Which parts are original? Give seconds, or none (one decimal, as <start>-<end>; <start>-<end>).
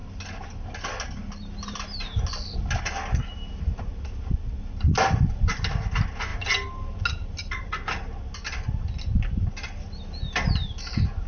0.0-11.3